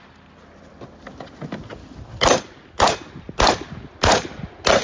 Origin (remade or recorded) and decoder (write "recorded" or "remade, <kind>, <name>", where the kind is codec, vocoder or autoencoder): recorded